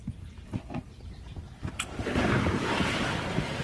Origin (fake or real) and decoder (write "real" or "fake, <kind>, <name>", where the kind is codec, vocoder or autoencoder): fake, vocoder, BigVGAN v2